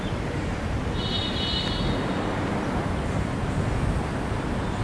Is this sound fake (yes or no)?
no